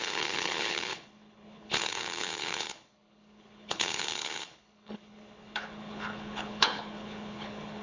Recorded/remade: remade